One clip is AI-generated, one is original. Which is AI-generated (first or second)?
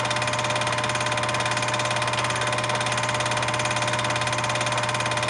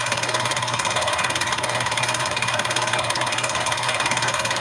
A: second